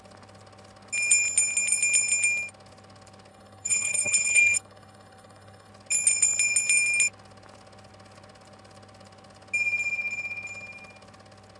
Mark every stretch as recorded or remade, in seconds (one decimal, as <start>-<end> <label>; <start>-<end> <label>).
0.0-3.3 recorded; 3.3-5.7 remade; 5.7-11.6 recorded